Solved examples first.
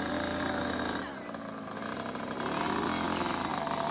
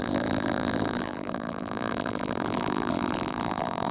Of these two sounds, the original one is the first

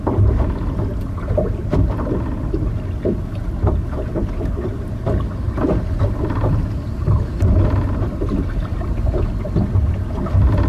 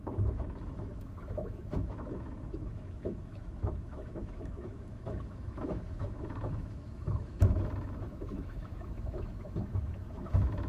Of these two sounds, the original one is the first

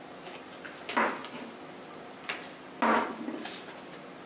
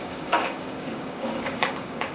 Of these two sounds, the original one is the first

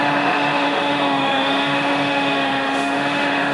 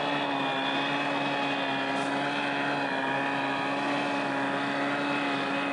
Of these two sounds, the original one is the second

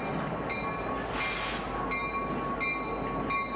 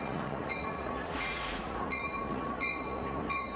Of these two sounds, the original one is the first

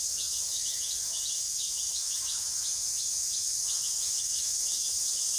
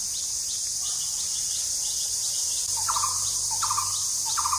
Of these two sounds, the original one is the second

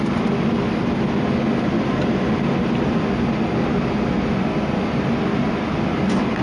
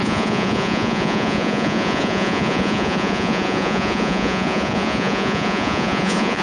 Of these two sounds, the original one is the first